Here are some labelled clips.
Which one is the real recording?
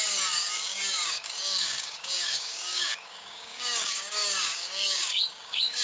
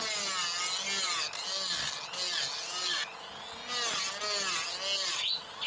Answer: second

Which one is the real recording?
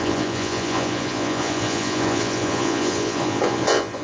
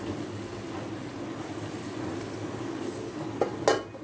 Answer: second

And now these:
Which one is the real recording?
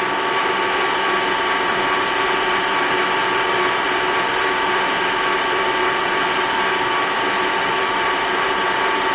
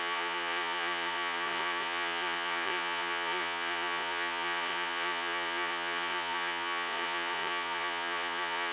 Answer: first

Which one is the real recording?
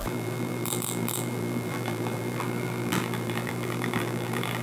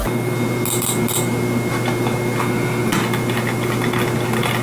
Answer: second